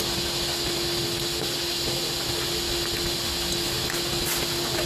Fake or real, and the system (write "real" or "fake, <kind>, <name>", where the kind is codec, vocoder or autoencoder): real